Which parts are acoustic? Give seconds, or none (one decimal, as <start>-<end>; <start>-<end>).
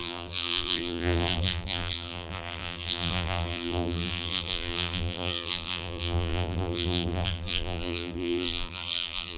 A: none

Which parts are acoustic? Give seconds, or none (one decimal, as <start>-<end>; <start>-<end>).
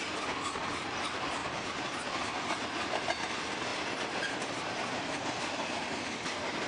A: 0.0-3.7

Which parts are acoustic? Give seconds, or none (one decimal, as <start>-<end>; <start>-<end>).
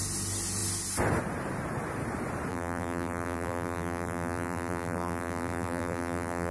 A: 0.0-2.5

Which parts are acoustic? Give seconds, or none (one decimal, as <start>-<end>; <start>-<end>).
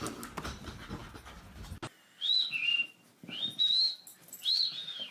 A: 0.0-4.1